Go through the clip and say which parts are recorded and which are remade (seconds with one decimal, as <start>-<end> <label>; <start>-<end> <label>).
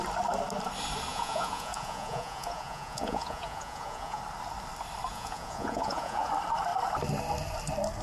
0.0-1.1 recorded; 1.1-4.2 remade; 4.2-5.1 recorded; 5.1-6.3 remade; 6.3-8.0 recorded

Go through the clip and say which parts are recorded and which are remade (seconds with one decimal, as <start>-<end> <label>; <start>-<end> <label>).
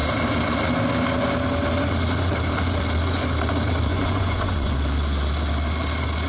0.0-3.9 recorded; 3.9-4.7 remade; 4.7-6.3 recorded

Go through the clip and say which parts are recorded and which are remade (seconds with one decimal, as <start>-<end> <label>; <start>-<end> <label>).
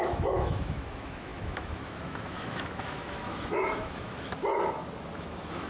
0.0-4.5 remade; 4.5-5.1 recorded; 5.1-5.7 remade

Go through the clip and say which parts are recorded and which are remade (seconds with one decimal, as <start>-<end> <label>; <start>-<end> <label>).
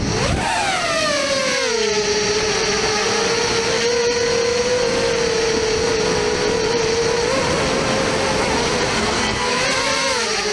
0.0-9.0 recorded; 9.0-9.6 remade; 9.6-10.5 recorded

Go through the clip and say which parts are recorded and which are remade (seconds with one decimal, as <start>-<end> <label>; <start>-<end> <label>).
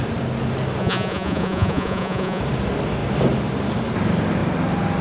0.0-0.8 recorded; 0.8-2.4 remade; 2.4-5.0 recorded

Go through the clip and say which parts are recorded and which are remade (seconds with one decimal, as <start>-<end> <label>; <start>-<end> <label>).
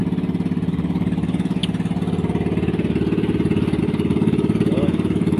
0.0-0.7 recorded; 0.7-1.6 remade; 1.6-3.8 recorded; 3.8-5.4 remade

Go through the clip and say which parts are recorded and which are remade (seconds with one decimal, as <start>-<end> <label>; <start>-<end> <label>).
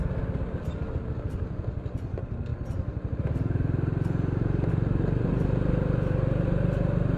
0.0-7.2 recorded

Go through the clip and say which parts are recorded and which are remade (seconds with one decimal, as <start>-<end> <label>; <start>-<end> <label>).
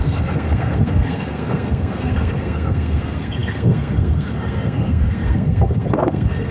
0.0-6.5 remade